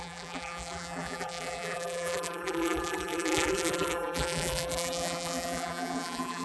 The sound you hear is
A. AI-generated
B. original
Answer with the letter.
A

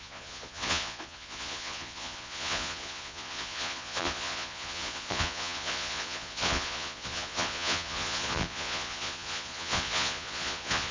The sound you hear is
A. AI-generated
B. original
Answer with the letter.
A